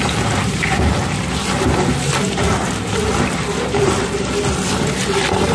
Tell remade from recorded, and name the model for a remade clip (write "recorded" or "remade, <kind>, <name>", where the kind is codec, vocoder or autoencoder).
recorded